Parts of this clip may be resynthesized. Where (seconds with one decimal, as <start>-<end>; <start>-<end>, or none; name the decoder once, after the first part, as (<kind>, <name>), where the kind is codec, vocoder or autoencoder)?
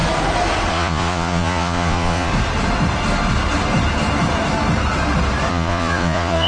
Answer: 0.7-2.3 (vocoder, Vocos); 5.5-6.5